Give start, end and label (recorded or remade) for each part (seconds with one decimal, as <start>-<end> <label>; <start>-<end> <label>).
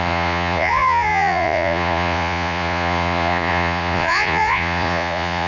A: 0.0-5.5 remade